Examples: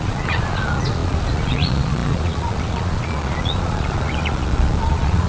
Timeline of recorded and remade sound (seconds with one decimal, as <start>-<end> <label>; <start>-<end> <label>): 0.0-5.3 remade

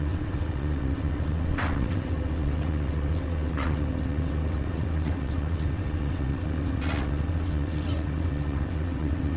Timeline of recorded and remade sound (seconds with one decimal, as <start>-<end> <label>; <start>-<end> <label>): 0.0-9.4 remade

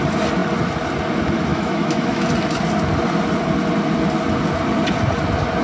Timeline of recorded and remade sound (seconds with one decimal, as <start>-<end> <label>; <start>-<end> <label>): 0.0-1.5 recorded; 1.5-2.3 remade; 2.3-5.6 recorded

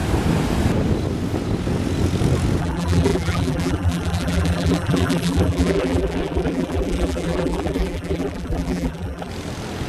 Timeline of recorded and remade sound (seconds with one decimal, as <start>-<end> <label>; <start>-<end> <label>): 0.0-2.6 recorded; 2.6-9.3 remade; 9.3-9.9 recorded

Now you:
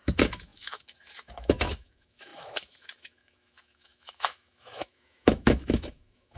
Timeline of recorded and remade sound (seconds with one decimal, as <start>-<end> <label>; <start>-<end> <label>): 0.0-6.4 remade

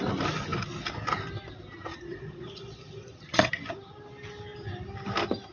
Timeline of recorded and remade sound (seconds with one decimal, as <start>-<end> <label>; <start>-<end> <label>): 0.0-1.9 recorded; 1.9-3.5 remade; 3.5-5.5 recorded

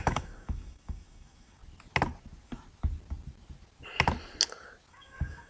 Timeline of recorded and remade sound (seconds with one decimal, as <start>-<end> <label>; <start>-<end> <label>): 0.0-1.6 remade; 1.6-4.9 recorded; 4.9-5.5 remade